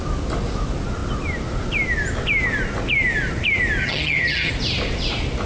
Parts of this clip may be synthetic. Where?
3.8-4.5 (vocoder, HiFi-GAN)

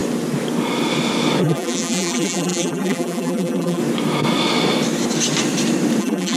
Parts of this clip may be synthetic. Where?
1.4-3.8 (vocoder, BigVGAN v2); 6.0-6.4

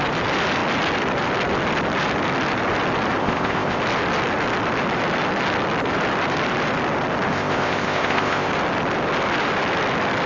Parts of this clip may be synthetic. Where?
3.2-3.8 (codec, ZipCodec); 7.3-8.5

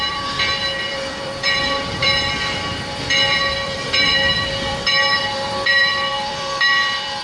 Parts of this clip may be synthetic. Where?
0.0-7.2 (vocoder, BigVGAN v2)

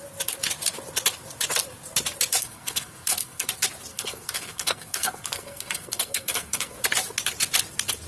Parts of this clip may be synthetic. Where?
2.4-3.5 (codec, SNAC); 3.9-6.8

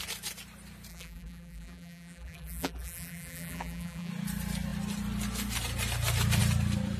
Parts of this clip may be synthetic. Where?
0.9-4.1 (vocoder, BigVGAN v2)

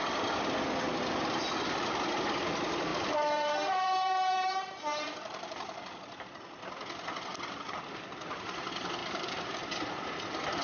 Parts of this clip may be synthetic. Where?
2.9-6.2 (vocoder, BigVGAN v2); 9.0-9.5